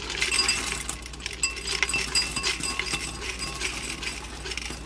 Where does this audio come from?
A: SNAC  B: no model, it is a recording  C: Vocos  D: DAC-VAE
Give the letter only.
B